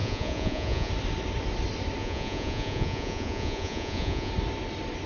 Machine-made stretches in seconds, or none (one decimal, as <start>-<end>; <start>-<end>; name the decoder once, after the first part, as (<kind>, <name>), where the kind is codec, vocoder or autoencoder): 0.0-0.9 (vocoder, Vocos); 2.0-4.3